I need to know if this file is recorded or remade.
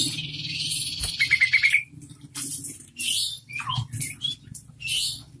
remade